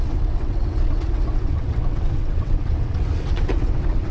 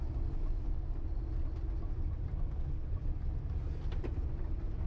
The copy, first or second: first